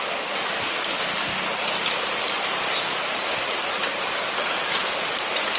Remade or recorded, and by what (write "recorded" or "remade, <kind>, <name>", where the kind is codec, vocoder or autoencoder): recorded